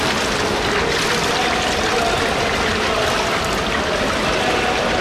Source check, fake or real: real